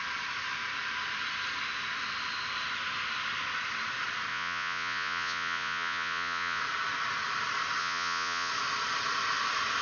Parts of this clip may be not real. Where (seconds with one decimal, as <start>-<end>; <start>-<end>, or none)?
4.3-6.6; 7.8-8.5